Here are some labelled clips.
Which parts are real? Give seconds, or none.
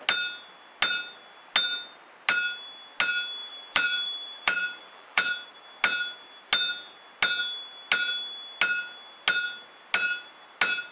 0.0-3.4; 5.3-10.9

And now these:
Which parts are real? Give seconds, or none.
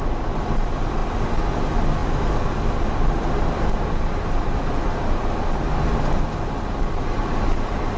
0.0-8.0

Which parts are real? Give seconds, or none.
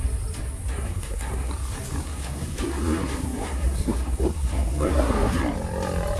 0.0-0.7; 1.5-2.0; 5.4-6.2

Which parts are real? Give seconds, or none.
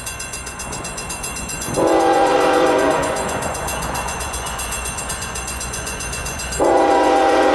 none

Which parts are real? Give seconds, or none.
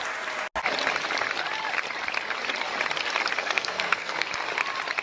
0.0-3.4; 4.3-5.0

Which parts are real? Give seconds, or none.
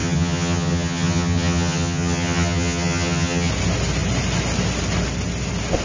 3.5-5.8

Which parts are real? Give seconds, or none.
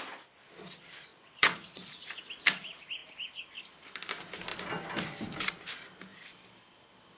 0.0-1.1; 2.3-7.2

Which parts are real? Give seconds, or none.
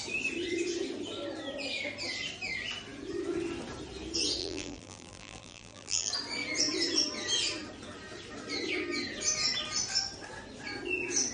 0.0-4.4; 6.1-11.3